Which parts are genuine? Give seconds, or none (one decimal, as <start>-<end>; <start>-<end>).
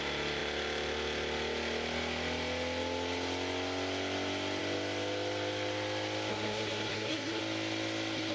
0.0-6.3; 7.4-8.3